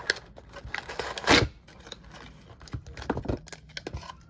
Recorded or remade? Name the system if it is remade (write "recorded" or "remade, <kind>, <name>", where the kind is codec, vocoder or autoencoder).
recorded